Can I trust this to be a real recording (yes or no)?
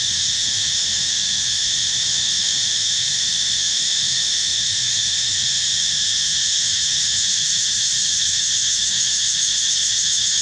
no